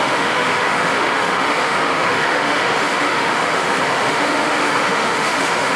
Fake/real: fake